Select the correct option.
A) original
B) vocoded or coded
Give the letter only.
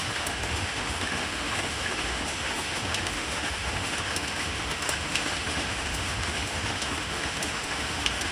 B